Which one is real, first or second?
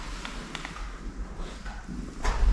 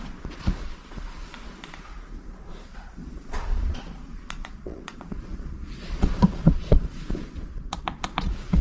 first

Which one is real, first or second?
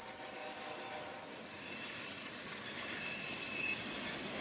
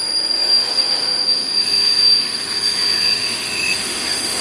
first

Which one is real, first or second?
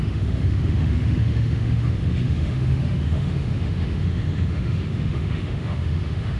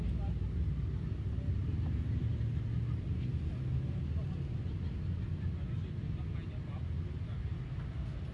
second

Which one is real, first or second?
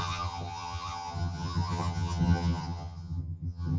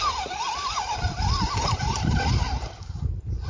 second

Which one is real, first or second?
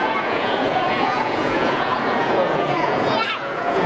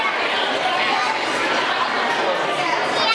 second